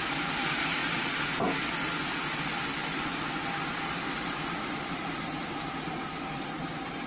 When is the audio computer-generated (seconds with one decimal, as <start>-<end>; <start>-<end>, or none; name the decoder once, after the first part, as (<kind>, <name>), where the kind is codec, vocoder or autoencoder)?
0.0-0.8 (vocoder, BigVGAN v2); 2.4-2.8; 4.7-7.1

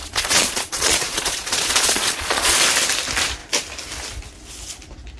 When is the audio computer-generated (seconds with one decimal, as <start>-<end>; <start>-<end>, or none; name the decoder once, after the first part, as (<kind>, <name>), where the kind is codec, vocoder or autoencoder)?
0.0-2.6 (vocoder, Vocos)

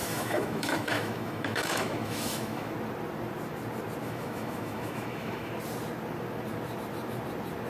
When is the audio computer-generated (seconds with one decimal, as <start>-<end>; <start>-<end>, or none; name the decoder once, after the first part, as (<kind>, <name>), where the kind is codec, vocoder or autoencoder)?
0.0-2.7 (autoencoder, DAC-VAE); 4.0-5.5

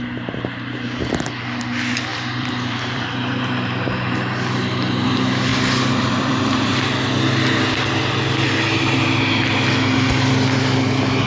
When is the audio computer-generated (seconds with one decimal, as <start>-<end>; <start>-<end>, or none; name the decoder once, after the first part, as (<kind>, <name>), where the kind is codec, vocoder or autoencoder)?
2.1-4.1 (vocoder, BigVGAN v2); 5.5-6.7

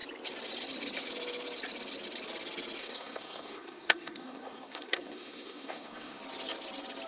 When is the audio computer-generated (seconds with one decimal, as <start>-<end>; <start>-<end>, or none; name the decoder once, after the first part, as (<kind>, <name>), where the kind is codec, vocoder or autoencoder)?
2.8-6.2 (codec, SNAC)

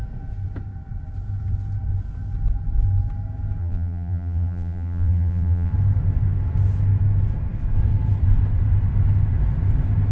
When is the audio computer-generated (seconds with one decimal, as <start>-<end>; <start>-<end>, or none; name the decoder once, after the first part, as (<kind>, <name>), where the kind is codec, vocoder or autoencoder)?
3.6-5.7 (vocoder, BigVGAN v2)

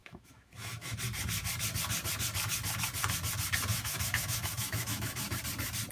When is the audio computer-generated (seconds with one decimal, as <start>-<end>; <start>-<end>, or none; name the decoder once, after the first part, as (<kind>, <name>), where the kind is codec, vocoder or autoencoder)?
0.0-1.0 (autoencoder, DAC-VAE); 3.7-5.4

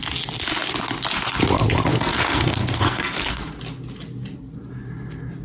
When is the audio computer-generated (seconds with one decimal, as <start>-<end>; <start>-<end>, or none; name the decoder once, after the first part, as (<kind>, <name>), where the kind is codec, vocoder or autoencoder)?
1.9-3.4 (codec, SNAC)